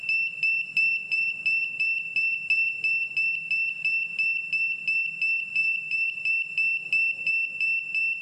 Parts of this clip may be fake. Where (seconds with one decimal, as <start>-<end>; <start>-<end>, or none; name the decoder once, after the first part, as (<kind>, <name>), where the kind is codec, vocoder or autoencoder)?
5.6-6.3 (vocoder, BigVGAN v2)